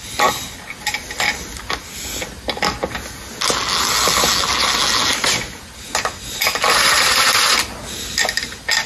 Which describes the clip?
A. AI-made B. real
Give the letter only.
B